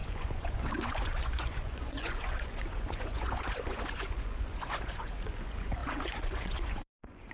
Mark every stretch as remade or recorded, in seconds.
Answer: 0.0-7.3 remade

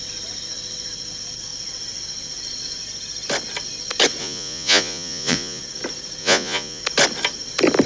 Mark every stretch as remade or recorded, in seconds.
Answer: 0.0-4.2 recorded; 4.2-5.6 remade; 5.6-6.2 recorded; 6.2-6.8 remade; 6.8-7.9 recorded

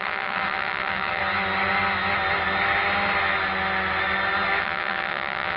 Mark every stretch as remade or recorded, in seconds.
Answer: 0.0-1.2 remade; 1.2-4.6 recorded; 4.6-5.6 remade

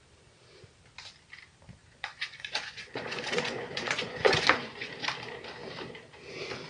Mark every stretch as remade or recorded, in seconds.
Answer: 0.0-1.8 recorded; 1.8-4.9 remade; 4.9-6.7 recorded

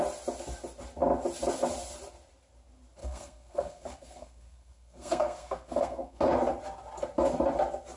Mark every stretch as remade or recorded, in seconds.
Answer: 0.0-3.0 recorded; 3.0-6.2 remade; 6.2-8.0 recorded

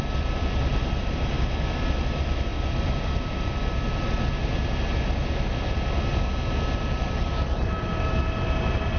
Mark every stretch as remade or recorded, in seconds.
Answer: 0.0-9.0 recorded

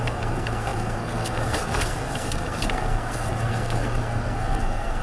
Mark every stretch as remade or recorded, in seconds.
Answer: 0.0-5.0 remade